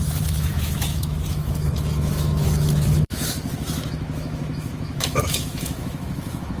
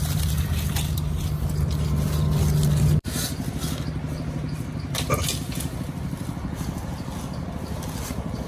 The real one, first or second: second